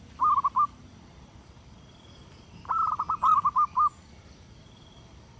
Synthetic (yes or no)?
no